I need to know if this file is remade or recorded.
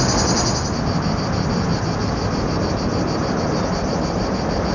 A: recorded